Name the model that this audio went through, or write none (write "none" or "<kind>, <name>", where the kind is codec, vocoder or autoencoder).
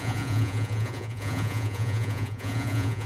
vocoder, Vocos